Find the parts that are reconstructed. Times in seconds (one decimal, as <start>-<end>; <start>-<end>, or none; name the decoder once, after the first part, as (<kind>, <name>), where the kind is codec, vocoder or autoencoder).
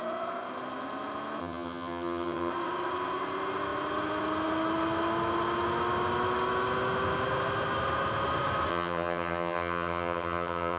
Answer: 1.4-2.5 (vocoder, HiFi-GAN); 8.7-10.8